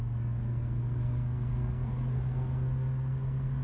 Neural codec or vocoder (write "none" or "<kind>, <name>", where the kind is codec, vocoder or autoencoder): codec, SNAC